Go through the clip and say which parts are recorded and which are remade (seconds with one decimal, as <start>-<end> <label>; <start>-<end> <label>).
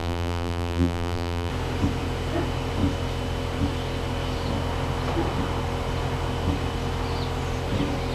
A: 0.0-1.5 remade; 1.5-8.1 recorded